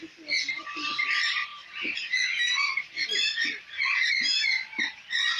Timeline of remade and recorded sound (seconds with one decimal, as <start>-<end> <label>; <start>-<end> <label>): 0.0-1.5 recorded; 1.5-4.7 remade; 4.7-5.4 recorded

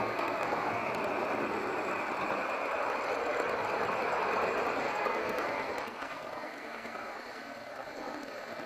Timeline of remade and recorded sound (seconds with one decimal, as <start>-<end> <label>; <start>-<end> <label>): 0.0-0.8 remade; 0.8-4.8 recorded; 4.8-8.7 remade